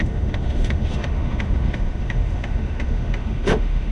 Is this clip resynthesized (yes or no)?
yes